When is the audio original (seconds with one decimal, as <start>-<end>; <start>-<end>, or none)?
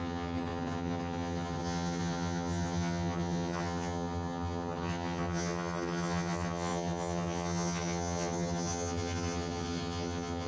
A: none